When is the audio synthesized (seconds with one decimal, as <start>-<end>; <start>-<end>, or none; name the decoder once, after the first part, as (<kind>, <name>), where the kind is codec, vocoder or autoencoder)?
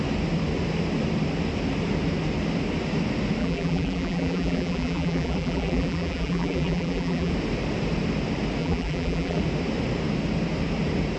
3.4-7.3 (vocoder, BigVGAN v2); 8.6-9.4